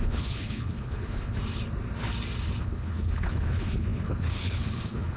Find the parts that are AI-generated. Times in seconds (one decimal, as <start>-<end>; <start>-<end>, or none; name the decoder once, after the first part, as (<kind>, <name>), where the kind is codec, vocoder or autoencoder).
0.0-1.4 (codec, HILCodec); 2.6-5.2